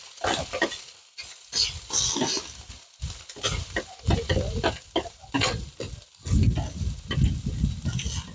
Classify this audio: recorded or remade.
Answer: recorded